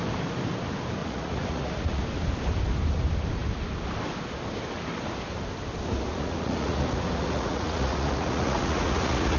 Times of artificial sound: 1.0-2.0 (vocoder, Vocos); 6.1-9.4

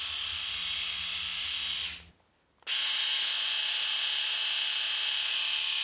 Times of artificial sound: none

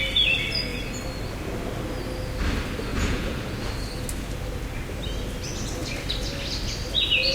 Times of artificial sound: 2.9-3.7 (vocoder, Vocos)

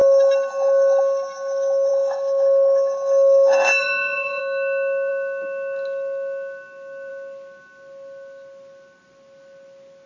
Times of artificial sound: 3.8-4.4 (vocoder, Vocos)

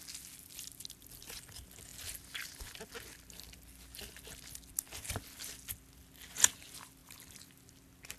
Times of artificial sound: none

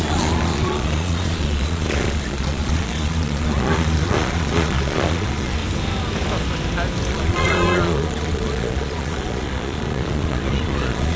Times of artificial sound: 0.0-5.6 (vocoder, Vocos); 7.1-11.2